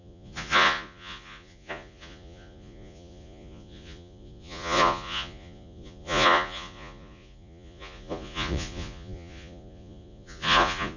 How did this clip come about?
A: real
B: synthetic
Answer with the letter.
B